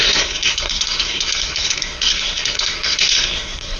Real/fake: fake